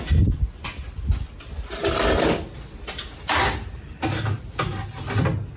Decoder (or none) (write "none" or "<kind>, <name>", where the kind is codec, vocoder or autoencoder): none